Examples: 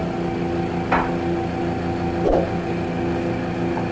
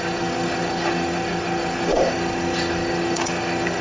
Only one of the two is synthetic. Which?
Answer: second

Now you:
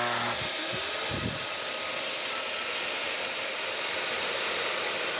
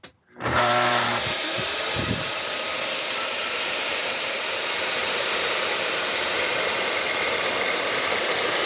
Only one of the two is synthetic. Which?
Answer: second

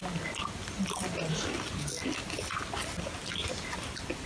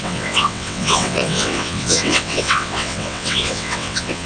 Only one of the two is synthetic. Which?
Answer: second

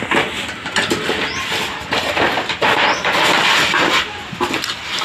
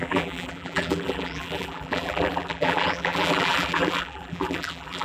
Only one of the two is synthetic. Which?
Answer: second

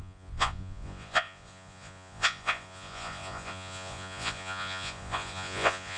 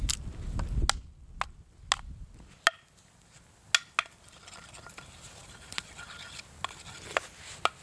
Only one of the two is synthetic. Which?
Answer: first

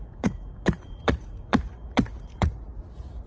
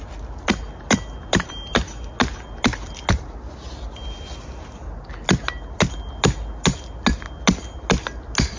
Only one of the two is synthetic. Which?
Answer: first